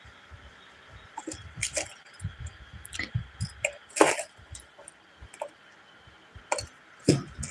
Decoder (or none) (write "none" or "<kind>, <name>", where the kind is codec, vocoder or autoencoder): vocoder, BigVGAN v2